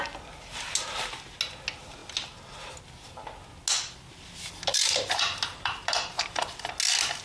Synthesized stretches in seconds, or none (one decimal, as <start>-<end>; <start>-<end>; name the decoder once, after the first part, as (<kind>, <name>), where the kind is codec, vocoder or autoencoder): 4.7-6.7 (vocoder, BigVGAN v2)